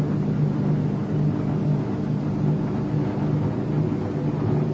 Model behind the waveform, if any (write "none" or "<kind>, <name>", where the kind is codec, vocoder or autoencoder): none